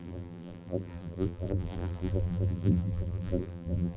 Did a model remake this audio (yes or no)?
yes